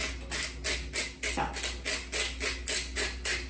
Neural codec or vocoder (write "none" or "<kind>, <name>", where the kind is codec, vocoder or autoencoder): none